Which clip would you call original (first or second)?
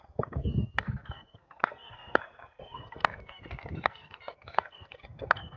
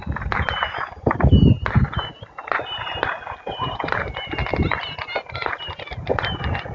second